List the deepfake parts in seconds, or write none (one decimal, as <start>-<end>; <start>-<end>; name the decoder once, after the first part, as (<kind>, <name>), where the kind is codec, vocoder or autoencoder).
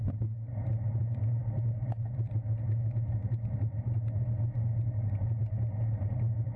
none